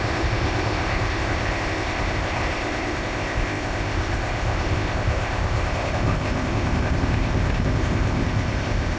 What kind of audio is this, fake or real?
fake